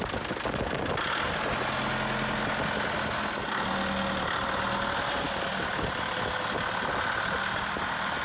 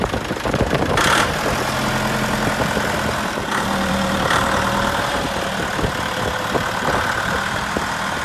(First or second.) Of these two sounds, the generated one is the second